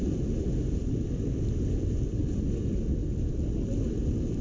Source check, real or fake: real